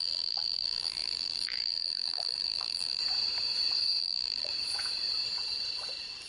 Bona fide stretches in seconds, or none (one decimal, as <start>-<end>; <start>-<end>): 3.0-4.0; 4.5-6.3